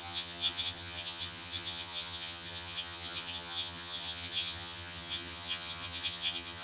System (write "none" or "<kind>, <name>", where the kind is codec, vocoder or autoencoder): vocoder, HiFi-GAN